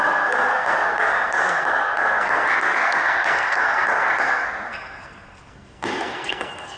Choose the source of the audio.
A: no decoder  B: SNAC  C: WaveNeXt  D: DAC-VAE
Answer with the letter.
B